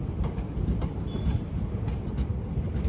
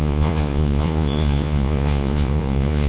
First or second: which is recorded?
first